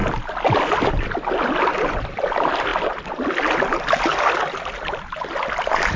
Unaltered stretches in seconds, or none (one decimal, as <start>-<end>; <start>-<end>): 0.0-6.0